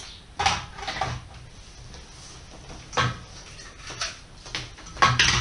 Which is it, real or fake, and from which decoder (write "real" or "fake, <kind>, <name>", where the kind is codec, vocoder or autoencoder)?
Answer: real